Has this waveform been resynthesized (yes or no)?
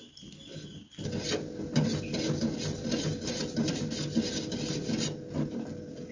no